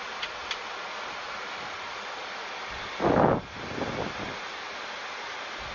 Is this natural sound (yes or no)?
yes